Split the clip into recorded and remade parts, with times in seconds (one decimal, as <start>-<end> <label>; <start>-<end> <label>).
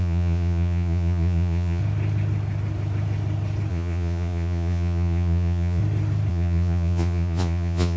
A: 0.0-1.8 remade; 1.8-3.7 recorded; 3.7-5.8 remade; 5.8-6.3 recorded; 6.3-8.0 remade